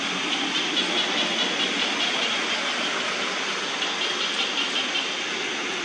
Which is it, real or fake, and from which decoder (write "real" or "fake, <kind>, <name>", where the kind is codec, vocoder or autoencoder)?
real